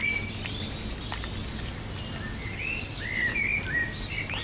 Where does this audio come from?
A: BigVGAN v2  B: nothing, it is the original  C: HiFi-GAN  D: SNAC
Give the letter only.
B